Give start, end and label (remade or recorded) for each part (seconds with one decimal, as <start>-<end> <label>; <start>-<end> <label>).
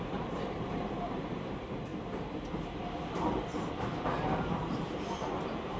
0.0-1.9 remade; 1.9-3.8 recorded; 3.8-5.8 remade